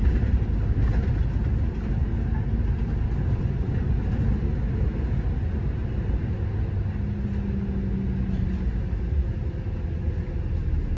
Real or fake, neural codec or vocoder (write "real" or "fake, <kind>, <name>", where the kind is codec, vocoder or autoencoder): real